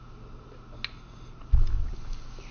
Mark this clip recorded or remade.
recorded